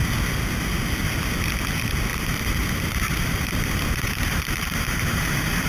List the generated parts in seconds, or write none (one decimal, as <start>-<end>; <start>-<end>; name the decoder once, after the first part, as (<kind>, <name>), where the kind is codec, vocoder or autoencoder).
2.1-5.7 (vocoder, BigVGAN v2)